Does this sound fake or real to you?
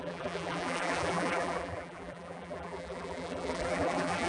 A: fake